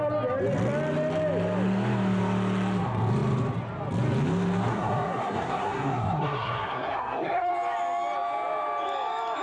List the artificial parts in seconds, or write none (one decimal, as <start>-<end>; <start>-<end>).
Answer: 4.7-7.5